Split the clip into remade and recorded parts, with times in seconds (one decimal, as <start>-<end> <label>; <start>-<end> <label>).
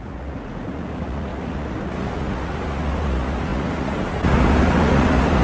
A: 0.0-5.4 remade